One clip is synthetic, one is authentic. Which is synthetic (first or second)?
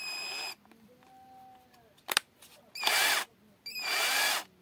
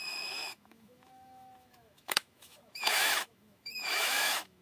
second